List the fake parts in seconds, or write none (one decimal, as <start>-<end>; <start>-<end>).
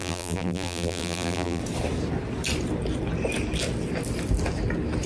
0.0-1.6